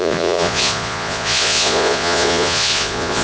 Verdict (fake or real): fake